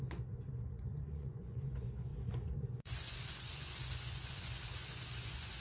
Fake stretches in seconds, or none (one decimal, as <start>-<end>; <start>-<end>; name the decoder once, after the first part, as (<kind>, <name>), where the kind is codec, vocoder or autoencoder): 0.0-5.6 (vocoder, Vocos)